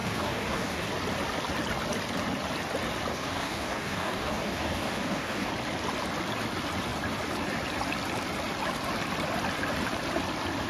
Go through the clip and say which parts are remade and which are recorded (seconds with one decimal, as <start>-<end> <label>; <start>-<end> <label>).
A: 0.0-0.9 remade; 0.9-3.1 recorded; 3.1-5.5 remade; 5.5-10.7 recorded